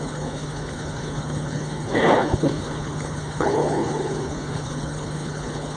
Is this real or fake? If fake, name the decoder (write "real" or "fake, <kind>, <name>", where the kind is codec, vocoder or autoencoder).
fake, codec, HILCodec